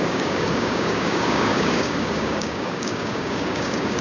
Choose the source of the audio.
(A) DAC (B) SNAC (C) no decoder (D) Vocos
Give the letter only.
A